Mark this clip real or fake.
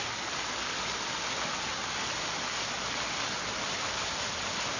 real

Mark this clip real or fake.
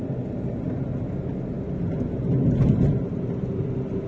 real